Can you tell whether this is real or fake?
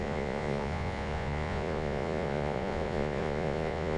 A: fake